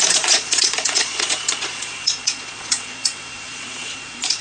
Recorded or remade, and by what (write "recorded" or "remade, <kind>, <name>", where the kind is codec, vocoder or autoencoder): remade, vocoder, Vocos